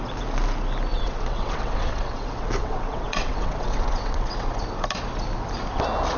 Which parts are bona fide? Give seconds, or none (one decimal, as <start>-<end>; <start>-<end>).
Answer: 0.0-0.9; 4.6-6.2

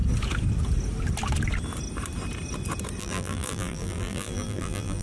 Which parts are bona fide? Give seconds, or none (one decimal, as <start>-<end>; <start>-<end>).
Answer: 0.0-3.0

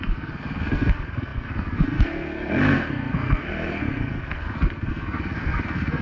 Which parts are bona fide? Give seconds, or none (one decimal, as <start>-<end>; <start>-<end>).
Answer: none

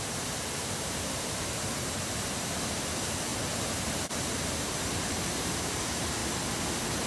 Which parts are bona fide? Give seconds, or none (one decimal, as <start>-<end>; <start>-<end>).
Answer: 3.3-3.9; 6.2-7.1

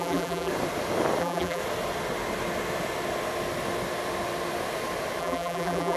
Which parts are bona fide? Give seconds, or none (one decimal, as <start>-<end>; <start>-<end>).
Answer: 0.5-1.2; 1.6-5.2

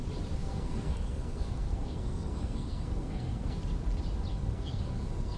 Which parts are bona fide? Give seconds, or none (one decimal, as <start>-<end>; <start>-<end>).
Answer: 0.0-0.4; 3.6-4.3

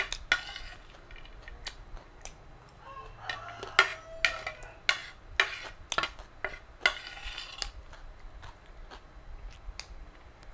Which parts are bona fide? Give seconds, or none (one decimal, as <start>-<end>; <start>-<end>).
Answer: 0.0-10.5

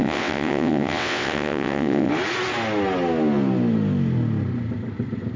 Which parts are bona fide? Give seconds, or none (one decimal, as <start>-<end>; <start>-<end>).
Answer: 2.1-5.4